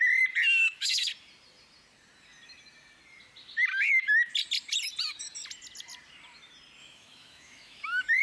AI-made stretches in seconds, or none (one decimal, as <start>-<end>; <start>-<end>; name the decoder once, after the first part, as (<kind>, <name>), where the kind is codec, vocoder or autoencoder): 0.6-1.1 (autoencoder, DAC-VAE); 3.7-4.3; 6.8-8.2